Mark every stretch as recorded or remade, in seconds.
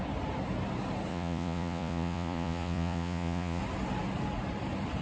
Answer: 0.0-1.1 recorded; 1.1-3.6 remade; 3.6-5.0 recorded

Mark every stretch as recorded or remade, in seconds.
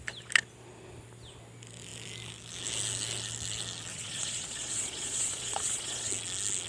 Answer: 0.0-3.9 recorded; 3.9-6.1 remade; 6.1-6.7 recorded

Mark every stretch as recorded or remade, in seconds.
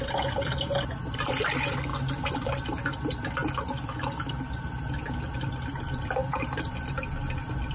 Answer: 0.0-7.7 recorded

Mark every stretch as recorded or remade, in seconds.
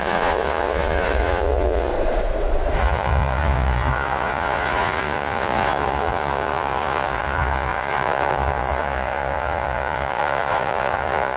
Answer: 0.0-1.9 remade; 1.9-2.8 recorded; 2.8-11.4 remade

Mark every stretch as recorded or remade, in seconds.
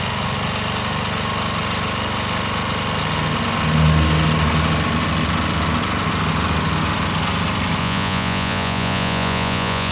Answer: 0.0-7.8 recorded; 7.8-9.9 remade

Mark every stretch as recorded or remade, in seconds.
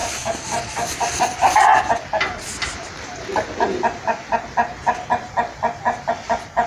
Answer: 0.0-6.7 recorded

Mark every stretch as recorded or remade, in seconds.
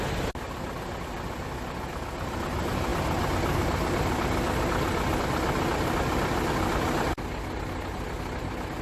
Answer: 0.0-8.8 recorded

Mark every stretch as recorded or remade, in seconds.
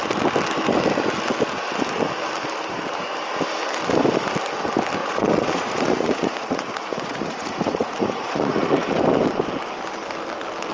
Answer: 0.0-5.0 recorded; 5.0-8.9 remade; 8.9-10.7 recorded